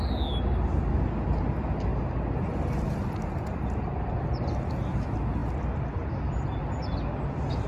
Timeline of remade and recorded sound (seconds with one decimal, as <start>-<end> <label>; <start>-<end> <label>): 0.0-7.7 recorded